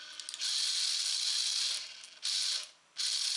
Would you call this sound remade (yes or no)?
no